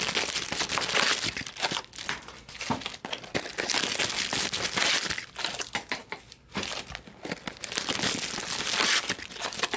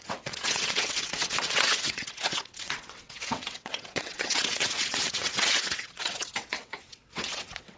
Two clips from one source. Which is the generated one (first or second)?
second